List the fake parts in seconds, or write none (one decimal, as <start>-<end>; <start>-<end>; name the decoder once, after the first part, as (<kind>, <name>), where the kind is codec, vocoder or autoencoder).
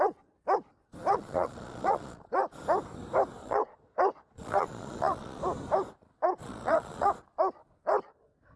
1.1-2.5 (vocoder, Vocos); 3.4-5.4; 6.4-7.1